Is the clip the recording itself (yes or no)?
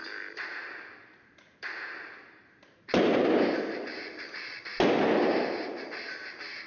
yes